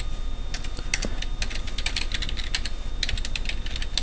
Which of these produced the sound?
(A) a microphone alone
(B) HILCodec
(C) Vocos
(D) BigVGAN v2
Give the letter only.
A